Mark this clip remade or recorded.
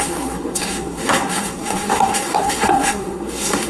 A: remade